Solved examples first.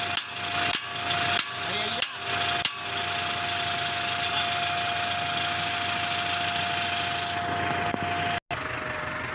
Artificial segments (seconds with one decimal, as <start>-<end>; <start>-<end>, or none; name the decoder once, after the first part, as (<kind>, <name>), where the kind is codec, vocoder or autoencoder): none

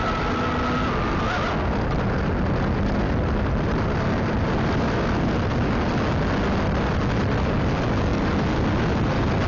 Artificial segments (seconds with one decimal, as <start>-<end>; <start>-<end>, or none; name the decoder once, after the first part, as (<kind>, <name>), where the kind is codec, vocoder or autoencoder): none

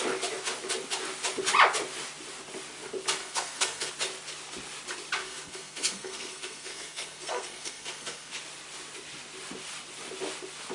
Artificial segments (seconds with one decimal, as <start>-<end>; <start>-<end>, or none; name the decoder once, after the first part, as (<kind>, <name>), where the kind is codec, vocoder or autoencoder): 3.2-3.9 (codec, SNAC); 5.2-8.3